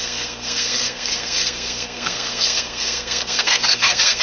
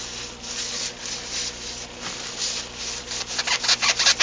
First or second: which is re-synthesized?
first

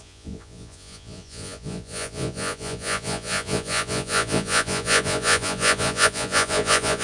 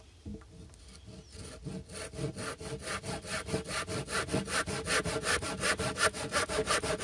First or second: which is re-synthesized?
first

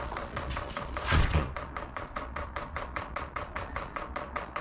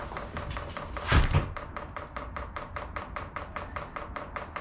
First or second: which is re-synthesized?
first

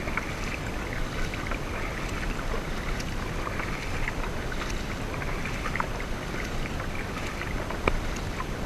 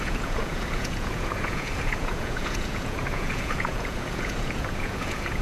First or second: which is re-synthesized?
second